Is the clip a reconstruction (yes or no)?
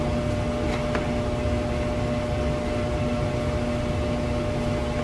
no